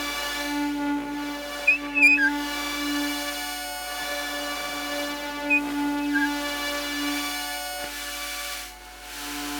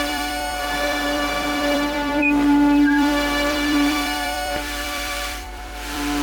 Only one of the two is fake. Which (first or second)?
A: second